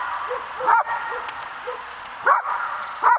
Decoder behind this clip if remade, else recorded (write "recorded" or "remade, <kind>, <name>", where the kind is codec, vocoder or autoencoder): remade, vocoder, Vocos